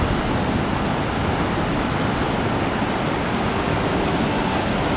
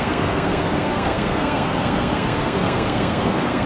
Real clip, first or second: first